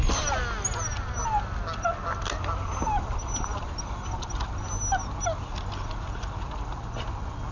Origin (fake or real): real